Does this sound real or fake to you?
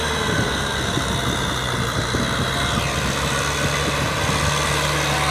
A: real